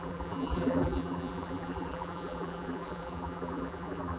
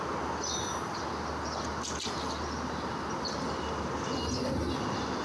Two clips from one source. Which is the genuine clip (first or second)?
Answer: second